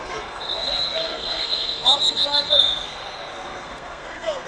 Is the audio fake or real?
fake